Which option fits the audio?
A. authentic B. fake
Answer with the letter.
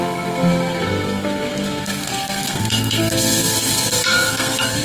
B